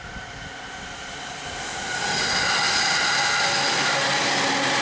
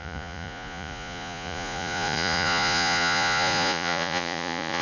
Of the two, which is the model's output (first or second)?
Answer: second